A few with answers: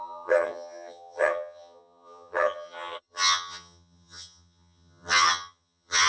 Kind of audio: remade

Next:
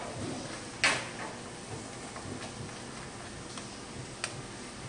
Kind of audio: recorded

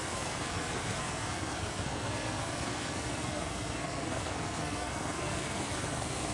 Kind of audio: remade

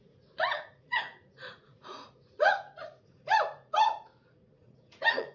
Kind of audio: remade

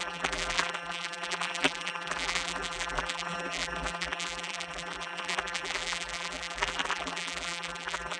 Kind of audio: remade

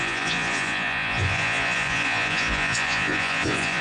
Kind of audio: remade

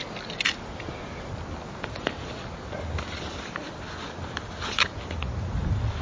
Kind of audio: recorded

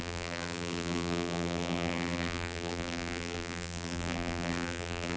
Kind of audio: remade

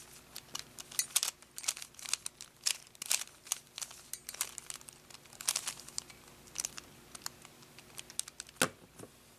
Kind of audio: recorded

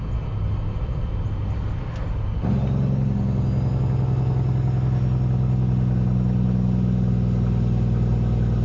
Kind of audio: recorded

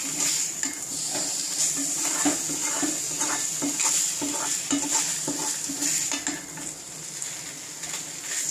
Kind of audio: recorded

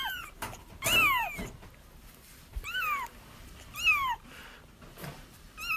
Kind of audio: recorded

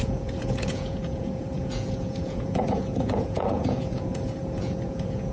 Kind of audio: remade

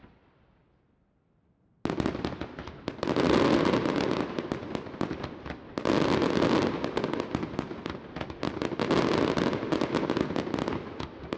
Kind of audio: recorded